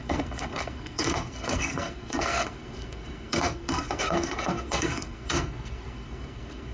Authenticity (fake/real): fake